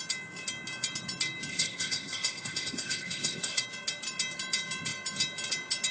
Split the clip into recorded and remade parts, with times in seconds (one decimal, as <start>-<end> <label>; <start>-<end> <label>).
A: 0.0-1.5 recorded; 1.5-3.6 remade; 3.6-5.9 recorded